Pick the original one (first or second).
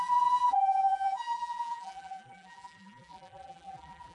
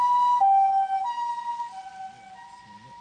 second